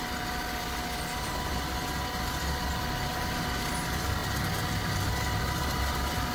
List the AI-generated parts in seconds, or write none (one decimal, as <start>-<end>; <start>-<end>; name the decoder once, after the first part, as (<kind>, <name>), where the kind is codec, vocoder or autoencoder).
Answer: none